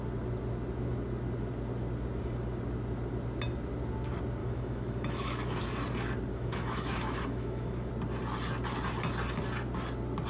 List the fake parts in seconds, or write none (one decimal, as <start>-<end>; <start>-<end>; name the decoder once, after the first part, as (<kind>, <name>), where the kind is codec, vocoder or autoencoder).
4.4-5.6 (autoencoder, DAC-VAE); 6.3-7.9

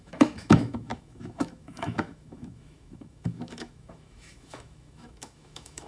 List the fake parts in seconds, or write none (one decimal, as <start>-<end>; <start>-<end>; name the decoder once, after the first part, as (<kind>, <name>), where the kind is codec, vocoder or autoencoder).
0.0-5.9 (autoencoder, DAC-VAE)

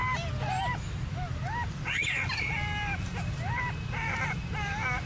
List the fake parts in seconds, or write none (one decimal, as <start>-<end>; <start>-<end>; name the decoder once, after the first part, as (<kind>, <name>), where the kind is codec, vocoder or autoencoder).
none